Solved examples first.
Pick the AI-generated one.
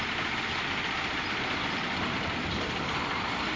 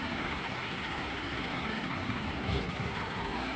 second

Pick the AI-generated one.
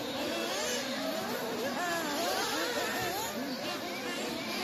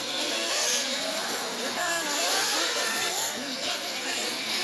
second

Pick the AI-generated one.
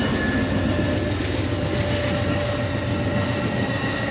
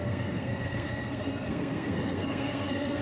second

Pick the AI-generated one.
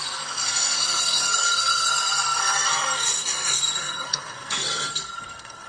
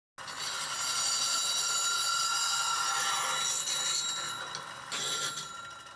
first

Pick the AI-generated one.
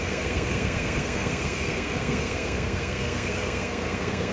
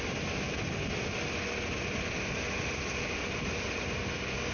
first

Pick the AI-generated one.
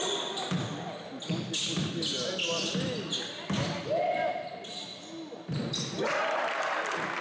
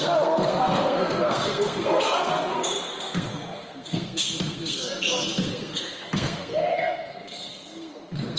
second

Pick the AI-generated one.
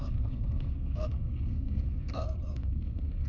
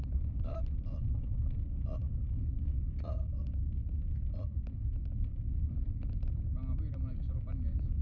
first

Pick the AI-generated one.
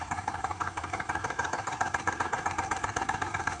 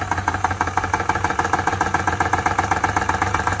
first